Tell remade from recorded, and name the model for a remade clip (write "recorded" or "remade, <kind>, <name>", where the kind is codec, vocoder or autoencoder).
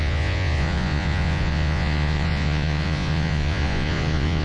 remade, vocoder, Vocos